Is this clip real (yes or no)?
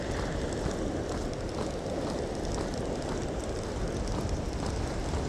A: yes